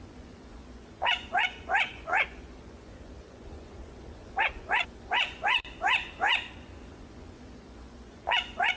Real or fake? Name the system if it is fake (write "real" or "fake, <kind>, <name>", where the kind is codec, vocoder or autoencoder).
fake, vocoder, Vocos